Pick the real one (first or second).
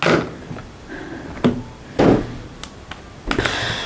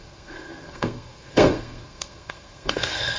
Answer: first